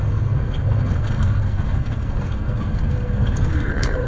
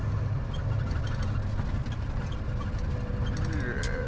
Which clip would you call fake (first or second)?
first